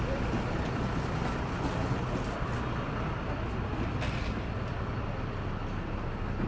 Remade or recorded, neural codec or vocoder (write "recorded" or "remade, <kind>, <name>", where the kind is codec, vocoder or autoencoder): recorded